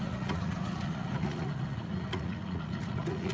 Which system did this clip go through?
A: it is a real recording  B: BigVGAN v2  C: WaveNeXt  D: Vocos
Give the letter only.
D